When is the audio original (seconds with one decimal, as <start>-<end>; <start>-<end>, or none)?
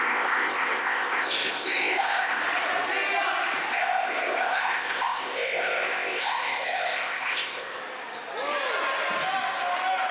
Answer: 2.4-3.7; 7.8-10.1